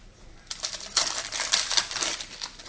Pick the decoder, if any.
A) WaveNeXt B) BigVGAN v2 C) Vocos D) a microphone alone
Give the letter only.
D